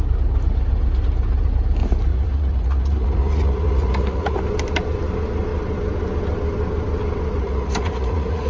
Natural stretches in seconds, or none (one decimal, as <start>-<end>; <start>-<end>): 0.0-2.1; 4.4-7.4